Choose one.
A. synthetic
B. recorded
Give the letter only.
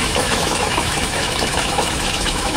A